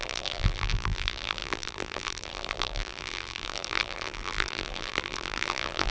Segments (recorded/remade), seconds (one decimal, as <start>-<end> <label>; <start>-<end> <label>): 0.0-5.9 remade